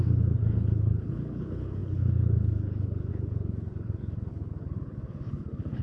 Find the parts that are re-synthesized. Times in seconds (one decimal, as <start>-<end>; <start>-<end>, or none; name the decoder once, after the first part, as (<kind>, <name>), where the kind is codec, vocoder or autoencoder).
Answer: 0.0-5.8 (codec, HILCodec)